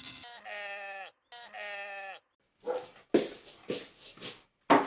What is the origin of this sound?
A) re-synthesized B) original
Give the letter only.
B